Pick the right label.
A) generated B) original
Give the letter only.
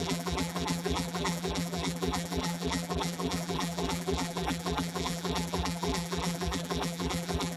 A